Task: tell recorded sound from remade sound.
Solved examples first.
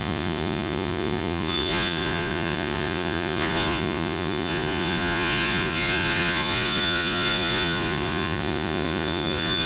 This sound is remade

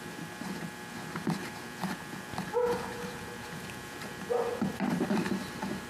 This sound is recorded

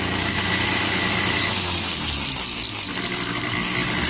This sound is recorded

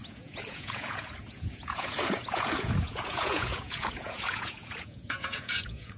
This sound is remade